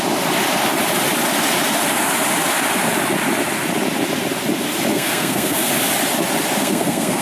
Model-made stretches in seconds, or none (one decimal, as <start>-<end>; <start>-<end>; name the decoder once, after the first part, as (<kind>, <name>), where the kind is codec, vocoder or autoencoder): 4.9-5.7 (codec, SNAC); 6.6-7.2

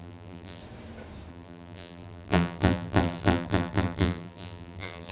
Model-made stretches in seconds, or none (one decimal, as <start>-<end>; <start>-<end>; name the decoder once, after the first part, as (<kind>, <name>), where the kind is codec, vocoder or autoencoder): 0.0-0.6 (vocoder, BigVGAN v2); 1.3-5.1